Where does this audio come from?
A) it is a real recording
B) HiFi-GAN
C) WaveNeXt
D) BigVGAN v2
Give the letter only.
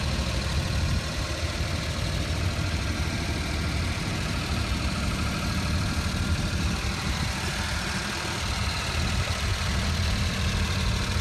D